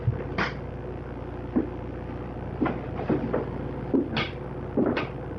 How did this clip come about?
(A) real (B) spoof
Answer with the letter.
A